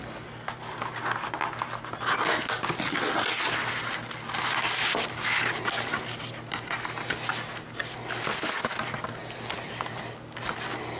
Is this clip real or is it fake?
real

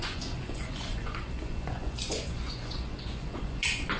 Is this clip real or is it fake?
fake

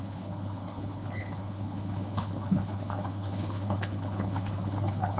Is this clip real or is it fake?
fake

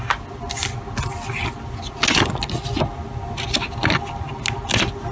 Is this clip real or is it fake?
real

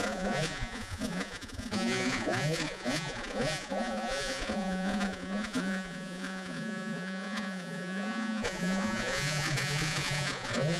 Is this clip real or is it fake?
fake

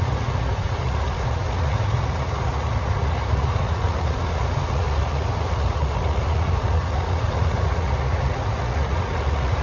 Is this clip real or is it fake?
fake